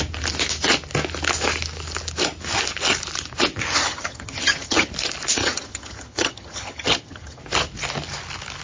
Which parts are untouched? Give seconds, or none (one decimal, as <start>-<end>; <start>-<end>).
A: 0.0-3.8; 4.9-5.4; 7.4-8.6